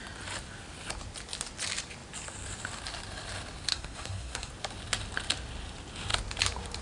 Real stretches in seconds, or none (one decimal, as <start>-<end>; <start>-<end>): 0.0-3.7; 4.5-6.8